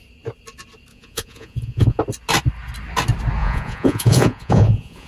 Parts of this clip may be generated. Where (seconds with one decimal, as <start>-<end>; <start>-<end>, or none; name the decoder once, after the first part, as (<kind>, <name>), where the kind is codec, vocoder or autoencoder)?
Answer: 0.9-2.0 (vocoder, Vocos); 3.4-5.1